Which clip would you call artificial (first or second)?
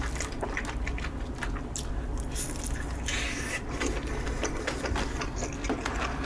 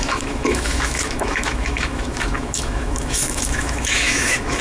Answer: second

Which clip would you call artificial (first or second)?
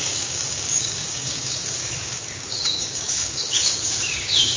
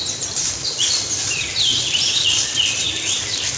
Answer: first